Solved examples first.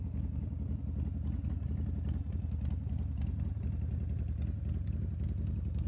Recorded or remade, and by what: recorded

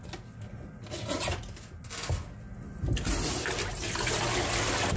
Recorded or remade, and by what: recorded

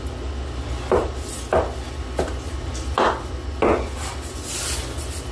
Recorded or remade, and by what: recorded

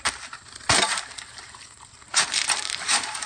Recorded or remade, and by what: remade, vocoder, BigVGAN v2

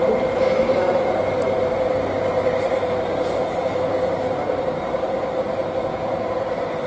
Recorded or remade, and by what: recorded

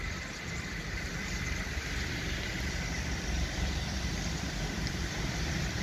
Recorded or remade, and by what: remade, vocoder, BigVGAN v2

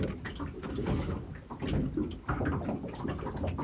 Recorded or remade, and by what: recorded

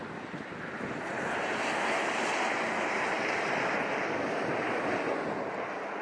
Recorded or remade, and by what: recorded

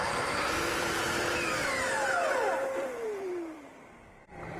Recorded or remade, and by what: remade, vocoder, BigVGAN v2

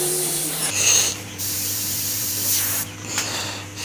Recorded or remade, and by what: remade, vocoder, BigVGAN v2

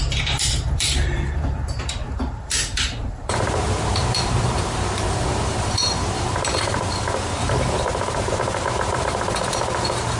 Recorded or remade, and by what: remade, vocoder, BigVGAN v2